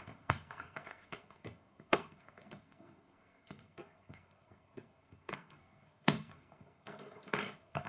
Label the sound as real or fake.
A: fake